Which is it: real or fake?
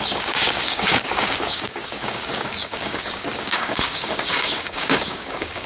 fake